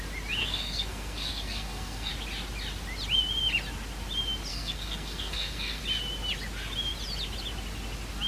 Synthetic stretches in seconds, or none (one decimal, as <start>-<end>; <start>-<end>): 0.4-2.1; 4.5-5.8